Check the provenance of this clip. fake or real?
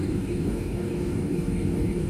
fake